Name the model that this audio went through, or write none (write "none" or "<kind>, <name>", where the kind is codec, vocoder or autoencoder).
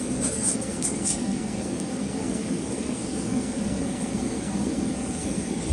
codec, SNAC